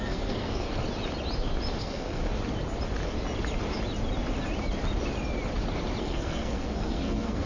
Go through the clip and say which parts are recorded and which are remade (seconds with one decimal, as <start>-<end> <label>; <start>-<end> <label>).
0.0-0.8 remade; 0.8-1.8 recorded; 1.8-2.2 remade; 2.2-6.0 recorded; 6.0-7.5 remade